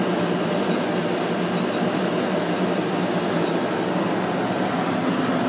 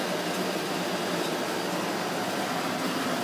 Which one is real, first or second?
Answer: first